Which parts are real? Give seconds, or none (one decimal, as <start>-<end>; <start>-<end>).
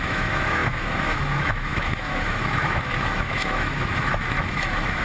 none